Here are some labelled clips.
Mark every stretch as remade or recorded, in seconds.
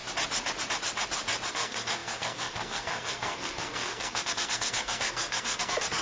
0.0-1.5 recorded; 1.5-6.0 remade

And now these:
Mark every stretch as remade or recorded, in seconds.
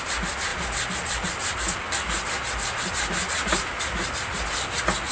0.0-5.1 recorded